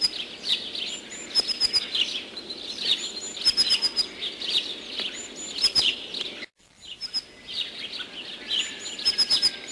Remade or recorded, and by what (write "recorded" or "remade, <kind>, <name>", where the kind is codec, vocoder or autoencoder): recorded